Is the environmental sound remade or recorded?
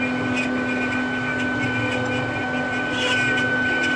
recorded